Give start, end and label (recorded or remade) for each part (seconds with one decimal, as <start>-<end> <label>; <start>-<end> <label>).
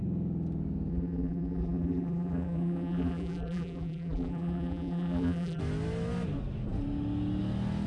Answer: 0.0-0.9 recorded; 0.9-5.6 remade; 5.6-7.9 recorded